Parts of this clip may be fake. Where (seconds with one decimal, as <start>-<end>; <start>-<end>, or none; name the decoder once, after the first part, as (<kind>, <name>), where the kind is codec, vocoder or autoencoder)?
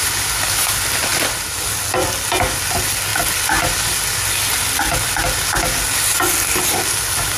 none